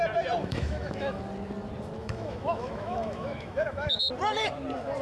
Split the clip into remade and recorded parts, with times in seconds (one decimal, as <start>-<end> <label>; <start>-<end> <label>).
0.0-0.4 recorded; 0.4-1.2 remade; 1.2-2.0 recorded; 2.0-4.0 remade; 4.0-5.0 recorded

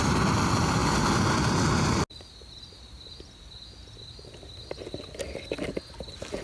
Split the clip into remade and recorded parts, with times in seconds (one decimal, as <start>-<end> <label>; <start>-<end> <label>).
0.0-6.4 recorded

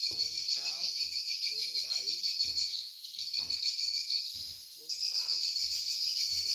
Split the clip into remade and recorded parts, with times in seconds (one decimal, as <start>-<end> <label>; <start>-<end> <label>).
0.0-6.5 remade

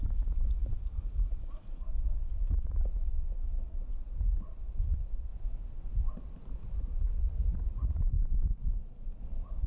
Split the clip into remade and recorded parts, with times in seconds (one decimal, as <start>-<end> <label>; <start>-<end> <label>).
0.0-5.3 remade; 5.3-6.8 recorded; 6.8-8.1 remade; 8.1-9.2 recorded; 9.2-9.7 remade

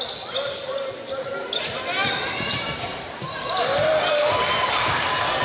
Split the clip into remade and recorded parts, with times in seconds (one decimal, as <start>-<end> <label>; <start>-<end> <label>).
0.0-2.9 recorded; 2.9-3.9 remade; 3.9-5.4 recorded